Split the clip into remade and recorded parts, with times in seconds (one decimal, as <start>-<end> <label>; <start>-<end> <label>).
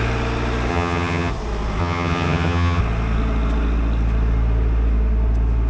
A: 0.0-0.7 recorded; 0.7-1.3 remade; 1.3-1.8 recorded; 1.8-2.8 remade; 2.8-5.7 recorded